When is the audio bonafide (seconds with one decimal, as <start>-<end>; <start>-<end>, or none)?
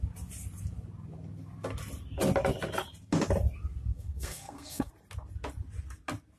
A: 0.0-3.9; 4.9-6.4